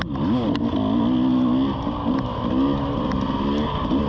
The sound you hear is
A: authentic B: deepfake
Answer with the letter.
A